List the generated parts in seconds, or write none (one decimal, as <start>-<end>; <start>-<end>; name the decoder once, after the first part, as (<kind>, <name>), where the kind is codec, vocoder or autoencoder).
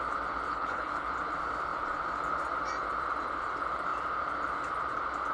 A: 0.5-1.1 (codec, HILCodec)